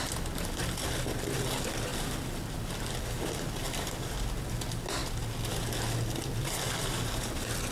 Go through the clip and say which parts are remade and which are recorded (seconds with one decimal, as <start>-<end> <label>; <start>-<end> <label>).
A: 0.0-7.7 recorded